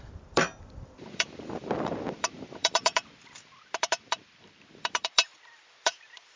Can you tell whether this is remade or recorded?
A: remade